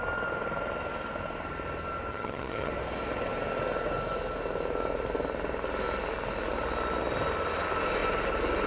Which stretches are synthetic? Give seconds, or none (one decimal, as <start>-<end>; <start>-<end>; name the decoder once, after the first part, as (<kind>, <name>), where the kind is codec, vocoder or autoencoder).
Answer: 2.1-2.7 (vocoder, HiFi-GAN)